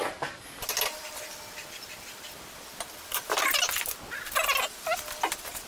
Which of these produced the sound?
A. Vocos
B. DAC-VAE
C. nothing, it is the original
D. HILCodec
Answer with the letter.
C